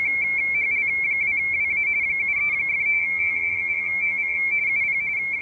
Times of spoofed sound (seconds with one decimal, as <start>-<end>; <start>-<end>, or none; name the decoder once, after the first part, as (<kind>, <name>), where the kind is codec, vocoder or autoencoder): 2.9-4.6 (vocoder, BigVGAN v2)